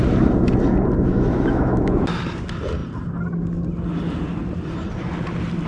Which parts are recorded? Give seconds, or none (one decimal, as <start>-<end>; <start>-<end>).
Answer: 0.0-1.1; 2.1-5.7

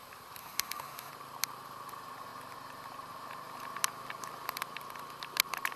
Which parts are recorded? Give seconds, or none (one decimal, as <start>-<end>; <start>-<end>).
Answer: 0.0-0.4; 1.1-5.8